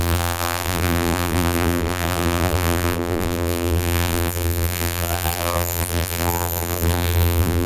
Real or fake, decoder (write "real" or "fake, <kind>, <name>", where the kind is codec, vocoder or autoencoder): fake, vocoder, BigVGAN v2